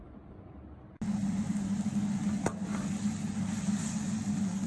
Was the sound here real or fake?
real